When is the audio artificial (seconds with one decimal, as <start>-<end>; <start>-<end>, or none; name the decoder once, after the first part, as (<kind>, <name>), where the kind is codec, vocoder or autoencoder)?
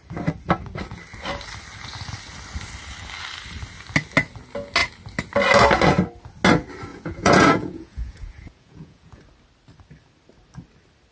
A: 6.9-9.2 (vocoder, Vocos)